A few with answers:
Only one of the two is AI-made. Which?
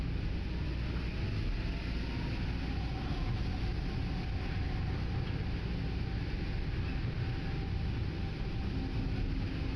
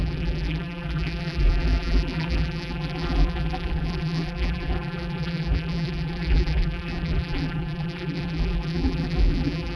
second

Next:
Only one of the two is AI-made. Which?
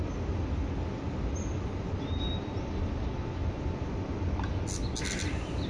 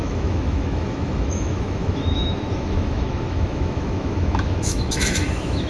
second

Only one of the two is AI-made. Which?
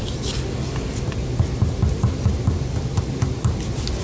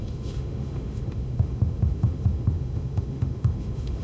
second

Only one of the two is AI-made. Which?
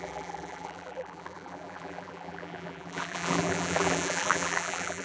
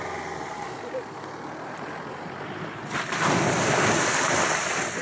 first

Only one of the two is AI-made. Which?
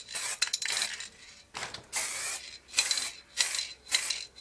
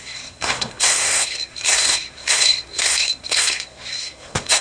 second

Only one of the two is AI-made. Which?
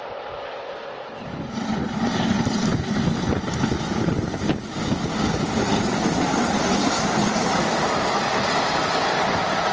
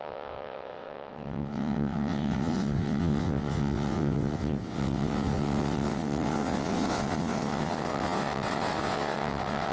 second